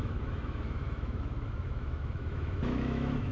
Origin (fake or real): fake